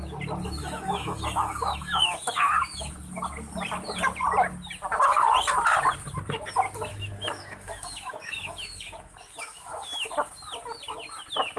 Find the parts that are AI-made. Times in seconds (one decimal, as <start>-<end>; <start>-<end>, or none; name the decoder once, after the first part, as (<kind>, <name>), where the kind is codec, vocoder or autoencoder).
0.6-2.9 (autoencoder, DAC-VAE); 6.9-10.1